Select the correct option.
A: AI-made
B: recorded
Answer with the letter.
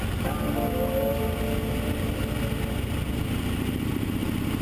B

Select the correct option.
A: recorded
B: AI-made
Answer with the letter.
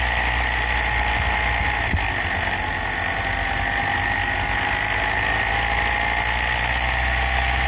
A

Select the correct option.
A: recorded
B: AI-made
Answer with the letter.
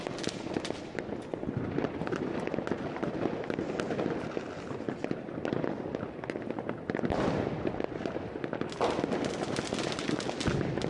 A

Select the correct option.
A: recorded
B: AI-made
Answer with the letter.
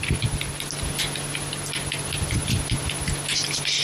A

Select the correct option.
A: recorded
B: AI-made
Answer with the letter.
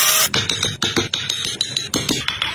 A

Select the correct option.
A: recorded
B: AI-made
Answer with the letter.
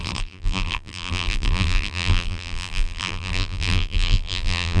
B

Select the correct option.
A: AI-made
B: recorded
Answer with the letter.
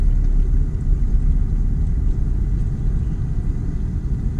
B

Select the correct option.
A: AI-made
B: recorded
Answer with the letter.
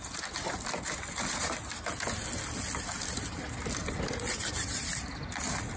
B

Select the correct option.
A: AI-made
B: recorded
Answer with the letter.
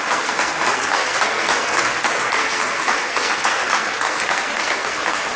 A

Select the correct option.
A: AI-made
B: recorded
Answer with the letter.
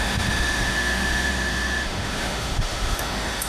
A